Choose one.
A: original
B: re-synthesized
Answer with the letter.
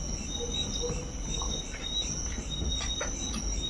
A